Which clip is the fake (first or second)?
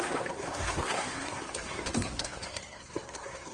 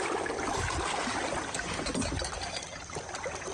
first